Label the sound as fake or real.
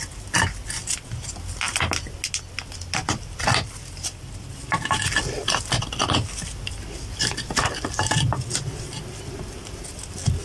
real